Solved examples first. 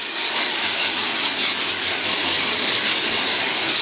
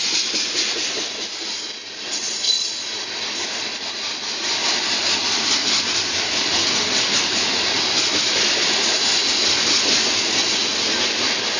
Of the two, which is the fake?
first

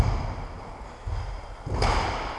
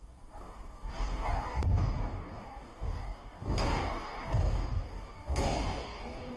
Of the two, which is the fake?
second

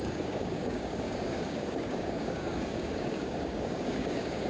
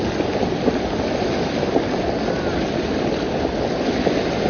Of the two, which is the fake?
first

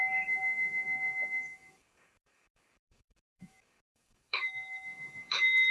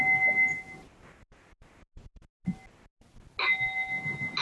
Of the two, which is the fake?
first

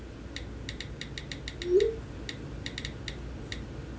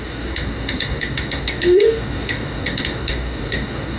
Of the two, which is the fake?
second